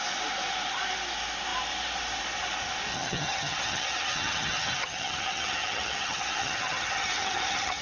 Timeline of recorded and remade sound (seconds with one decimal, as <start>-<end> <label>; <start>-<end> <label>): 0.0-2.9 recorded; 2.9-7.8 remade